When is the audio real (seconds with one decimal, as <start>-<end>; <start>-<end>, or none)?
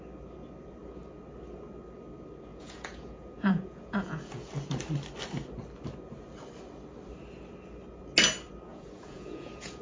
0.0-2.5; 4.5-8.7